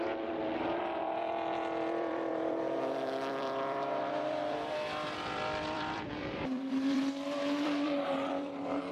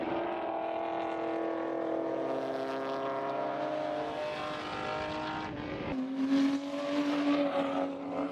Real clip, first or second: second